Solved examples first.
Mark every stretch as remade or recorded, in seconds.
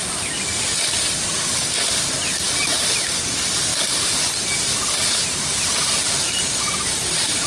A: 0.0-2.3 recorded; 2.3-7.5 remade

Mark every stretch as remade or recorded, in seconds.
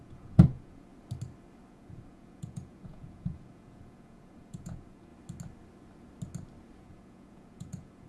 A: 0.0-0.9 remade; 0.9-1.7 recorded; 1.7-5.1 remade; 5.1-6.8 recorded; 6.8-8.1 remade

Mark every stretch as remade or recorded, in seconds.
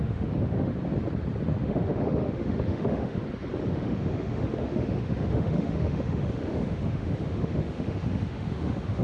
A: 0.0-0.7 remade; 0.7-1.6 recorded; 1.6-3.2 remade; 3.2-3.7 recorded; 3.7-9.0 remade